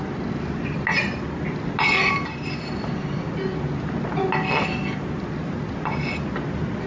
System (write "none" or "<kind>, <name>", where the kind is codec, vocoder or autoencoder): none